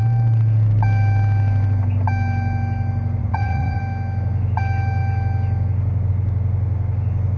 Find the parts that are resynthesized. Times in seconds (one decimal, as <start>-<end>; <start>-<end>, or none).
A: 3.2-3.8